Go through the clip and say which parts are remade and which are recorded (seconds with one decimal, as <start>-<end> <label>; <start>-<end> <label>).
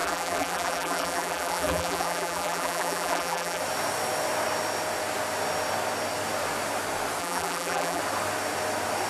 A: 0.0-3.6 remade; 3.6-7.2 recorded; 7.2-8.0 remade; 8.0-9.1 recorded